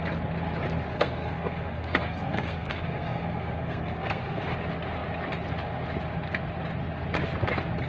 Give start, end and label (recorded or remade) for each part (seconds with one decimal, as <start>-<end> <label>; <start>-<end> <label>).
0.0-0.9 recorded; 0.9-4.4 remade; 4.4-7.9 recorded